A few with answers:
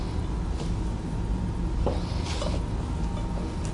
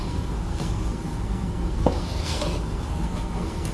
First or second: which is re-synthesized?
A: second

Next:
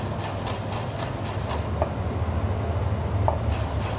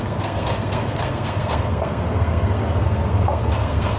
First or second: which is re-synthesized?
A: second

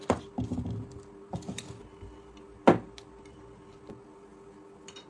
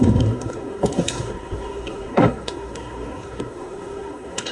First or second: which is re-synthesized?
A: second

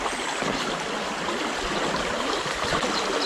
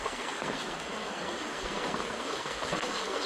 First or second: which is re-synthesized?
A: second